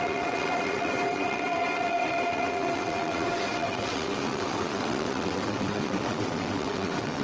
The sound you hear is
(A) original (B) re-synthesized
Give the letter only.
B